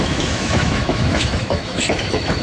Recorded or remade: remade